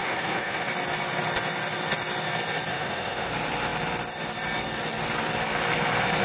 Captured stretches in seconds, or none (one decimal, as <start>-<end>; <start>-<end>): 0.7-2.7; 3.3-6.2